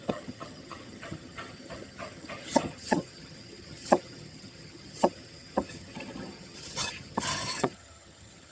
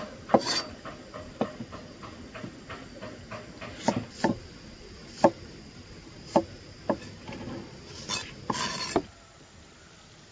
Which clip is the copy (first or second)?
first